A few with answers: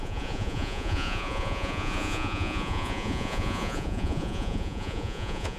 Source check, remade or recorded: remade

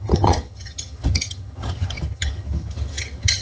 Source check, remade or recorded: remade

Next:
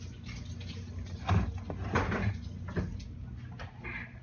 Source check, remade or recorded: recorded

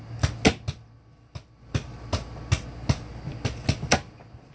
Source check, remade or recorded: recorded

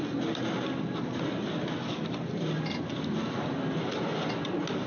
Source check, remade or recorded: recorded